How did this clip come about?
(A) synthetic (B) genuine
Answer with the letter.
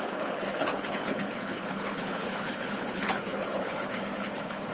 A